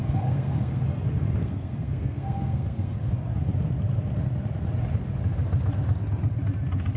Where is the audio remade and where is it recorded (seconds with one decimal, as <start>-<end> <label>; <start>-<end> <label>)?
0.0-0.8 remade; 0.8-1.4 recorded; 1.4-3.1 remade; 3.1-7.0 recorded